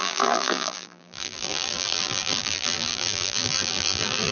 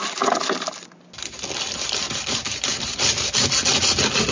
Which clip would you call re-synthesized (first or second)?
first